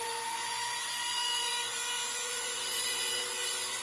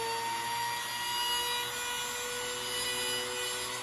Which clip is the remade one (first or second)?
first